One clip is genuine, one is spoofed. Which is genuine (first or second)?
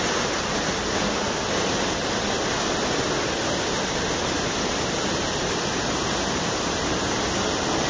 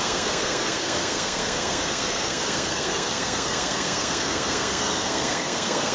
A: first